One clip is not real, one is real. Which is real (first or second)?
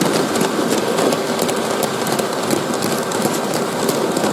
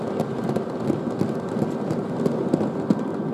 second